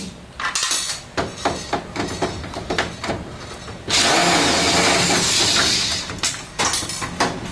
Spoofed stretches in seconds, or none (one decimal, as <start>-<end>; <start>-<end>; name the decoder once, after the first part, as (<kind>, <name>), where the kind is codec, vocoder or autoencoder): none

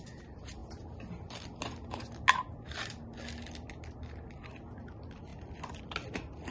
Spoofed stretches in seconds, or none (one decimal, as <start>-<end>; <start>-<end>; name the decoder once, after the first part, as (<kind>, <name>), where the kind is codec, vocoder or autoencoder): none

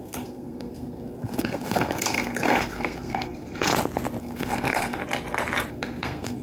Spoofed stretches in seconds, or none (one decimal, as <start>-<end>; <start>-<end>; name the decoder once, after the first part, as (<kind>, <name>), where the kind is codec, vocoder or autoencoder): 0.0-3.7 (codec, SNAC); 4.2-5.0; 5.7-6.4

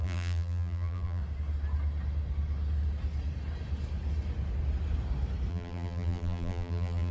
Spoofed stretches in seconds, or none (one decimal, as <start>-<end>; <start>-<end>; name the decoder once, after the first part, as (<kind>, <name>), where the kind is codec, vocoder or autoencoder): 0.0-1.2 (vocoder, BigVGAN v2); 5.5-7.1

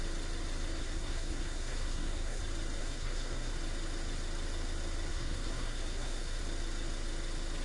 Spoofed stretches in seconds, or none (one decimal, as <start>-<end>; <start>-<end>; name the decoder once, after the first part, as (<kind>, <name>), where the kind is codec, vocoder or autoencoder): 0.8-2.4 (codec, SNAC); 2.8-3.5; 5.1-6.4

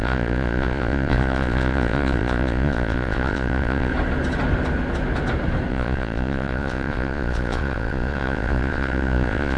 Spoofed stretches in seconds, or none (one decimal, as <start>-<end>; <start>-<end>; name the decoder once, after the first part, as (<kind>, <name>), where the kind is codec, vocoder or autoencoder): 0.0-3.9 (vocoder, Vocos); 5.7-9.6